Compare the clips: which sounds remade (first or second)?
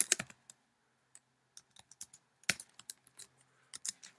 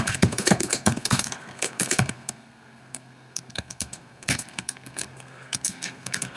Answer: second